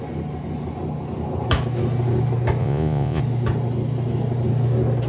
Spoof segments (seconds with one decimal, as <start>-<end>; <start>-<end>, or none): 2.6-3.2